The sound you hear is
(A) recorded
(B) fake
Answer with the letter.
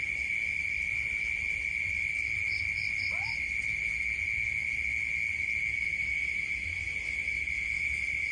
A